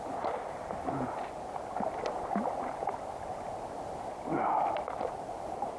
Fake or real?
real